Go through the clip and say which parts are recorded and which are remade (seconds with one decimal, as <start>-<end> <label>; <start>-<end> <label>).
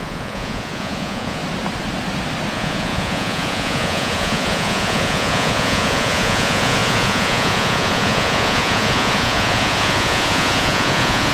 0.0-1.4 remade; 1.4-2.5 recorded; 2.5-11.3 remade